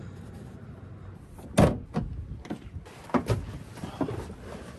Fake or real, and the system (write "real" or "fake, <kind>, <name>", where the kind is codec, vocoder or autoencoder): real